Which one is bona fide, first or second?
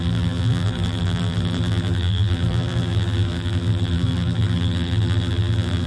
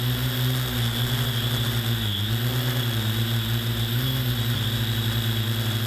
second